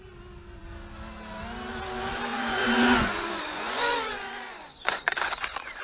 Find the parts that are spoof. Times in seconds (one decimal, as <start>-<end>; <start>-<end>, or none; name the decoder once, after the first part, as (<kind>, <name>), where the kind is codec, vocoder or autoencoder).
2.3-5.8 (vocoder, Vocos)

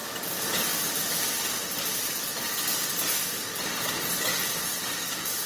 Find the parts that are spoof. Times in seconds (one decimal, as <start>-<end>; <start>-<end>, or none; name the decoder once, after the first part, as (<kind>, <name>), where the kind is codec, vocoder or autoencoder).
none

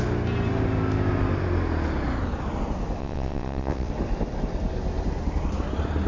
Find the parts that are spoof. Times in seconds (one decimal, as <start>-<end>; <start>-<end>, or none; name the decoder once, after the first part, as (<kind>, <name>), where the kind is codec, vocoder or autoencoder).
3.0-3.9 (vocoder, WaveNeXt)